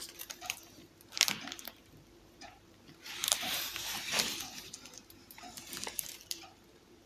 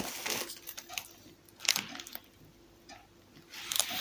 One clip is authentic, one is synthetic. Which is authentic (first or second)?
second